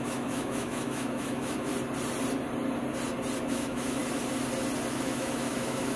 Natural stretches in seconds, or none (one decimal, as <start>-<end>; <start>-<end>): 1.7-3.5; 4.0-4.9